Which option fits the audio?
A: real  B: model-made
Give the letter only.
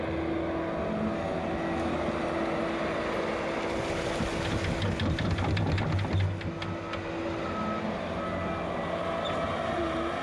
A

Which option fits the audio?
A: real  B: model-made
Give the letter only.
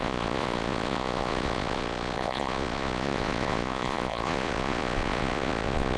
B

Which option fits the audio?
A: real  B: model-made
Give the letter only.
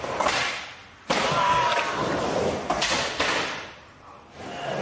A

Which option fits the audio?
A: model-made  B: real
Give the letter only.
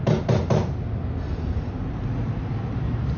B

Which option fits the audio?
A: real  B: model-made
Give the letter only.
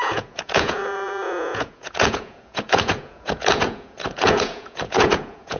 B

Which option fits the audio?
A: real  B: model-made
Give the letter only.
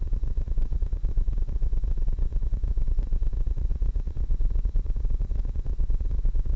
B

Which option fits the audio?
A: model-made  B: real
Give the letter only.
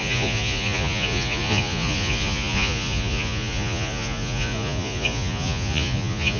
A